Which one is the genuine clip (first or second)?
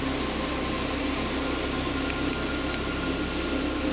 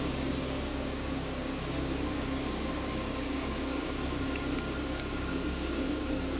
first